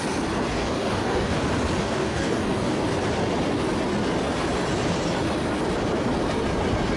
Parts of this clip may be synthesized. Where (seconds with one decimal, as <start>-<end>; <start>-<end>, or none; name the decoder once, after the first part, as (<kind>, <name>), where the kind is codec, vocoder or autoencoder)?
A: 0.5-1.3 (codec, DAC); 1.8-2.8